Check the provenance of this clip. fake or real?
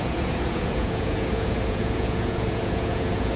fake